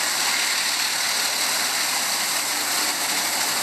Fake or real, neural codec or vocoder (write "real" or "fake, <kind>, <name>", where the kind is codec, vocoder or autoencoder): real